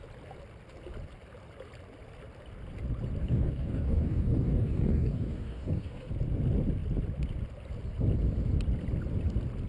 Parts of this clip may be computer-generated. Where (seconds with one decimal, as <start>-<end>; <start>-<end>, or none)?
3.2-6.1